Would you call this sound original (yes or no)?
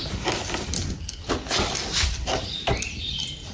yes